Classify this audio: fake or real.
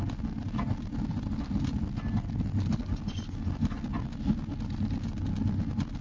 real